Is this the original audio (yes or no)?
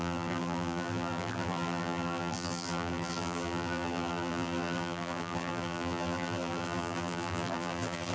no